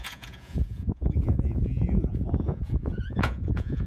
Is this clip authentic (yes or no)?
no